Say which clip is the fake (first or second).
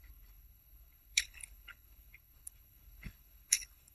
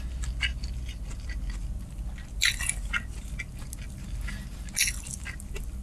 first